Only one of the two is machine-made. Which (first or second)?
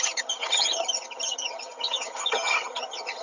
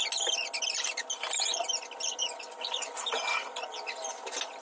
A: first